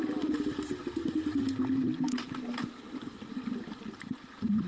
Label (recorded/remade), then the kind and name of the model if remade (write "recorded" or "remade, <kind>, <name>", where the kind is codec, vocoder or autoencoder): recorded